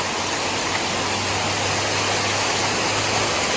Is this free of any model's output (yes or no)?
yes